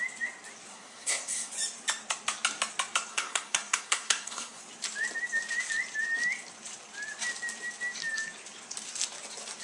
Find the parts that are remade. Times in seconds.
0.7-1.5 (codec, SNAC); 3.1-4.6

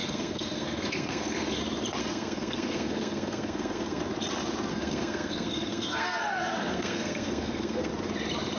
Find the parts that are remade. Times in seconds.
0.0-1.6 (codec, SNAC); 2.0-4.0; 4.7-7.9

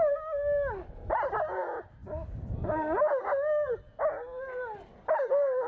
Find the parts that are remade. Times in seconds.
none

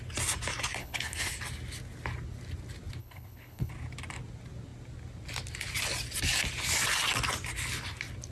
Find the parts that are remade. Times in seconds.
0.8-1.3 (codec, HILCodec); 3.0-3.7

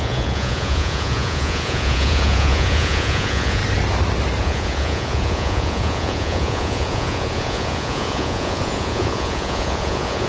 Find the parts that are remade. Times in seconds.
0.0-3.6 (vocoder, Vocos); 4.4-10.3

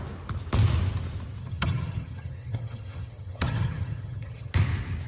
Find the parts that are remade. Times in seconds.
1.4-4.5 (vocoder, HiFi-GAN)

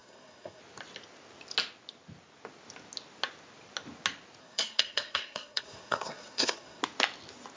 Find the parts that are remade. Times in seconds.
0.0-0.6 (codec, SNAC); 4.4-6.8

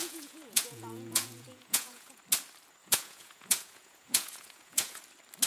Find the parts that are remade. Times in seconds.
0.0-2.2 (vocoder, Vocos); 2.8-5.0